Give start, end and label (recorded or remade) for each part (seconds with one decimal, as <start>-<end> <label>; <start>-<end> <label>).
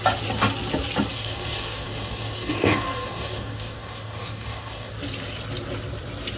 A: 0.0-1.1 recorded; 1.1-4.9 remade; 4.9-6.4 recorded